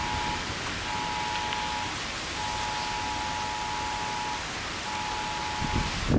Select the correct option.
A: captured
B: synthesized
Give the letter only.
A